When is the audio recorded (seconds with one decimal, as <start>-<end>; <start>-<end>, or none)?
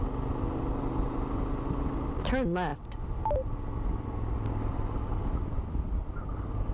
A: 0.0-6.7